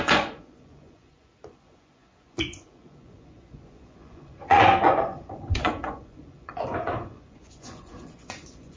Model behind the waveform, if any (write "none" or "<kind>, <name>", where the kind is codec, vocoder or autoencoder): vocoder, Vocos